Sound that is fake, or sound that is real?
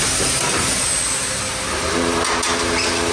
real